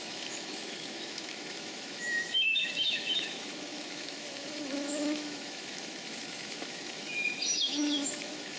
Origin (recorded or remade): remade